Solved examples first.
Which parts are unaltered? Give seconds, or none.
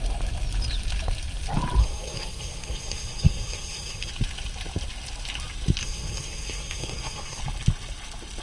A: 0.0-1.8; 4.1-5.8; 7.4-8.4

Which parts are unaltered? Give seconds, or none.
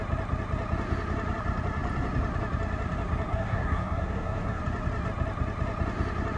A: 0.0-3.3; 4.6-6.4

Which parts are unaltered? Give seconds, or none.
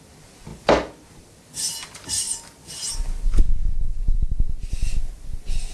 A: 0.0-5.7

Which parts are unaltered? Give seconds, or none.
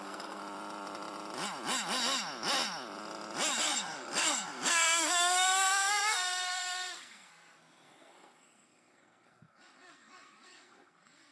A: 0.4-3.6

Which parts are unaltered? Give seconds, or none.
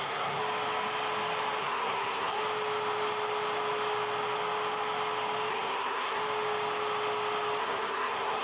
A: 0.4-1.6; 2.4-5.5; 6.2-7.6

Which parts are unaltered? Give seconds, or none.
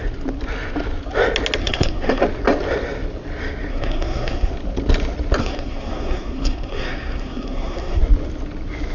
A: 0.0-1.6; 2.2-3.7; 4.5-5.4; 8.0-8.9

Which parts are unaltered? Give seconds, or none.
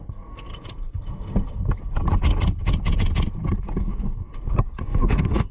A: 0.5-3.8; 4.3-4.8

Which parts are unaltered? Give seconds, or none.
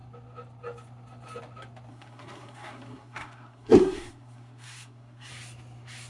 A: 0.0-1.9; 5.3-6.1